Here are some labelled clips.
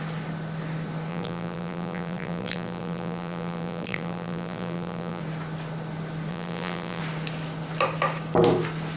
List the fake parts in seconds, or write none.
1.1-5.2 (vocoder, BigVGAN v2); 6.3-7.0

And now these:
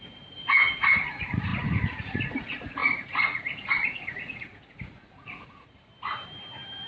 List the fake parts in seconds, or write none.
0.0-5.9 (vocoder, Vocos)

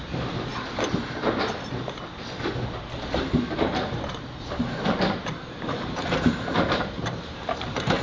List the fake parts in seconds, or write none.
0.0-0.5 (vocoder, BigVGAN v2); 3.2-8.0